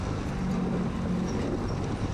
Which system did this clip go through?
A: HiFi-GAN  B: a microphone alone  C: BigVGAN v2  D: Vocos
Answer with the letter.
B